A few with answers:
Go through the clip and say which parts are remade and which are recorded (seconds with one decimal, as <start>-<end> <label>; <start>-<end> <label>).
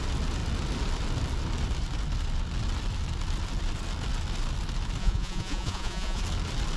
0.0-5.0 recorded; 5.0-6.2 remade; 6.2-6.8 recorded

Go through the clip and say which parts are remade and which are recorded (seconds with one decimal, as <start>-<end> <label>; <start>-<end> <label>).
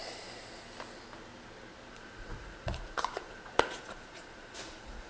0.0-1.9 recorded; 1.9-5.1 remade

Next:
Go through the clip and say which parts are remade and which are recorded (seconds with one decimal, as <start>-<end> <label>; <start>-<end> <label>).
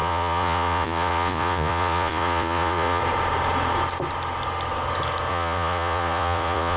0.0-3.0 remade; 3.0-5.3 recorded; 5.3-6.8 remade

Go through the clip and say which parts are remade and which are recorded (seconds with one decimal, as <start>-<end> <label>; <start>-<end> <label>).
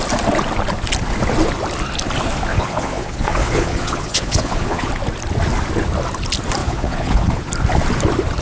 0.0-2.5 recorded; 2.5-4.9 remade; 4.9-6.6 recorded; 6.6-7.5 remade; 7.5-8.4 recorded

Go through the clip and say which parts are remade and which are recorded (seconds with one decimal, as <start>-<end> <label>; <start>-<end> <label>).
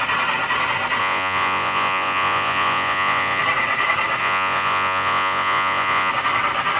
0.0-1.0 recorded; 1.0-3.4 remade; 3.4-4.2 recorded; 4.2-6.1 remade; 6.1-6.8 recorded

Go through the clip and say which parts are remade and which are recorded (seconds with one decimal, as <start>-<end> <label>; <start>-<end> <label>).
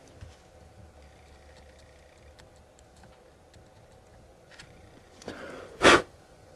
0.0-4.3 recorded; 4.3-6.6 remade